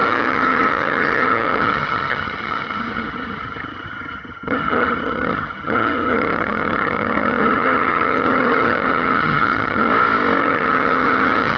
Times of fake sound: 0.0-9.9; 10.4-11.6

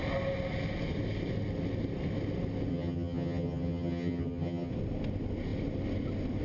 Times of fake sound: 2.7-4.7

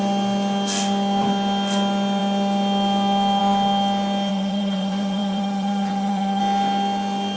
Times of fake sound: 4.3-6.4

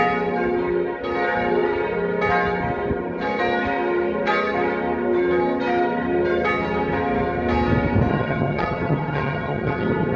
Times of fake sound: 8.1-10.2

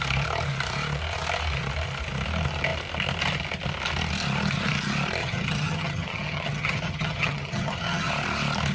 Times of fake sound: 5.2-8.1

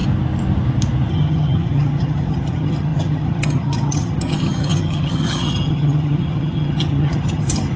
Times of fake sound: 1.1-7.8